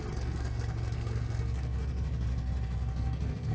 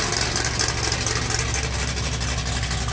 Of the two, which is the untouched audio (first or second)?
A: second